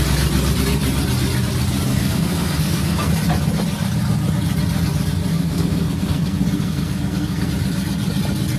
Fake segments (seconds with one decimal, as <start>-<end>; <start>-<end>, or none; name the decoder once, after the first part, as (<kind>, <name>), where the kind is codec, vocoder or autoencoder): 1.9-3.1 (codec, SNAC); 5.3-7.5